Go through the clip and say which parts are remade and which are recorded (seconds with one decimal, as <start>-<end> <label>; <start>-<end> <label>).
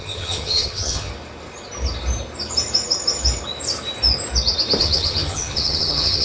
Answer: 0.0-1.1 remade; 1.1-4.8 recorded; 4.8-6.2 remade